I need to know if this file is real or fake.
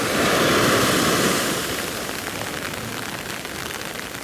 fake